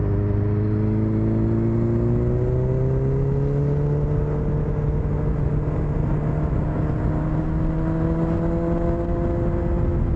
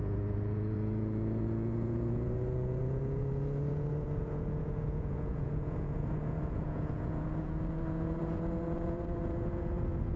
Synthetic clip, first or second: second